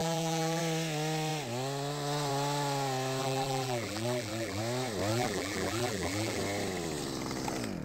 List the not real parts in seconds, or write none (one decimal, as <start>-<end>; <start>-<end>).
0.0-0.6; 3.2-4.6; 5.1-6.4